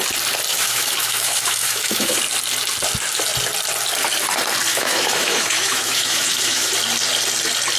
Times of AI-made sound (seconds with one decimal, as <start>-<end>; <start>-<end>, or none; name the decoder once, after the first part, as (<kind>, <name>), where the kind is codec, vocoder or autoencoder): 0.5-2.2 (autoencoder, DAC-VAE); 4.7-6.7